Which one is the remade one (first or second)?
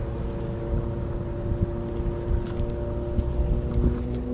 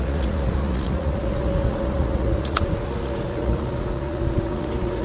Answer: second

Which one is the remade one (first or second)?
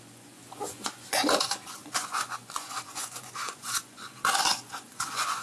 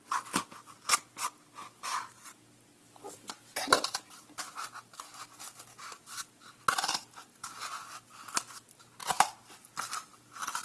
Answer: first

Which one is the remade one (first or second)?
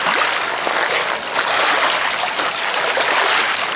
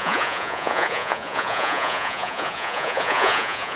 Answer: second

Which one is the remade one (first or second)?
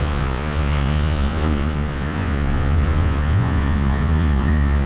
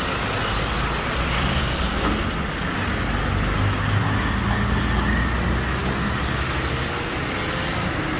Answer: first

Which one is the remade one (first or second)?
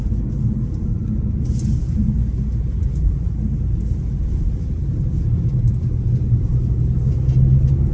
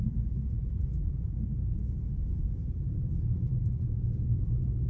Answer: second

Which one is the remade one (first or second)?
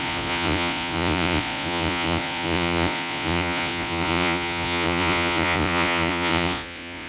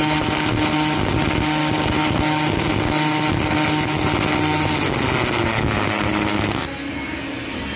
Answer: first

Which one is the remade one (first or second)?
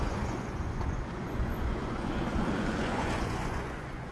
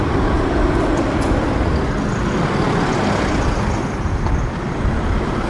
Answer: first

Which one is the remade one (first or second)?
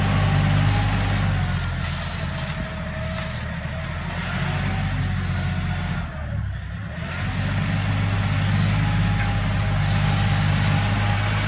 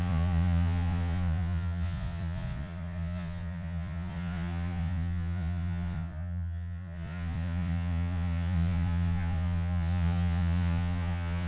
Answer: second